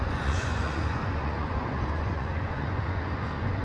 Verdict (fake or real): fake